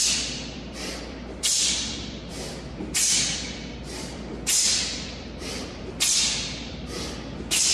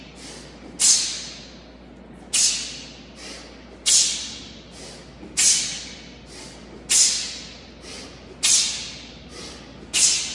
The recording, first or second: second